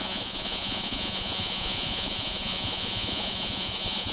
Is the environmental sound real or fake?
fake